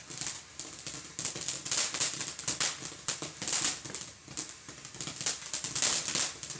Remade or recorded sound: recorded